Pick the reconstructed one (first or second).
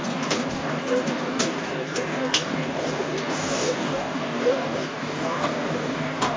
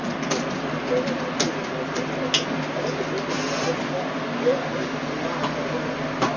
first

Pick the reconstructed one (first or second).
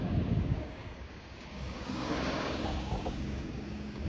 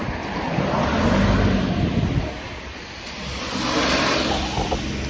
first